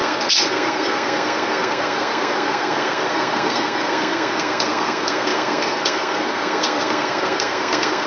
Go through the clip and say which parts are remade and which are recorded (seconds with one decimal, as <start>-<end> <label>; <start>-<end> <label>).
0.0-8.1 remade